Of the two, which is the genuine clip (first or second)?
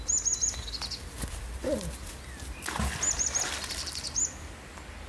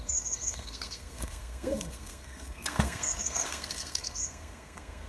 first